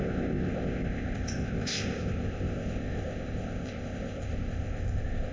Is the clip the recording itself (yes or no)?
no